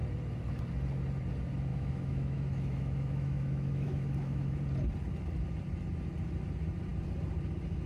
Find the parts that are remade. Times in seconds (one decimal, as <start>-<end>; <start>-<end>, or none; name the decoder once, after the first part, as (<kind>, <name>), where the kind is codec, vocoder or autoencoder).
1.7-4.6 (autoencoder, DAC-VAE)